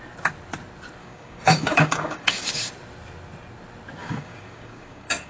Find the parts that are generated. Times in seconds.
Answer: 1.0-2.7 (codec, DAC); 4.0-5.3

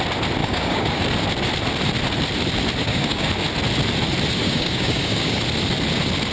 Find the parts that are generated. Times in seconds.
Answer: 0.4-1.0 (codec, DAC); 2.8-3.3; 4.4-5.4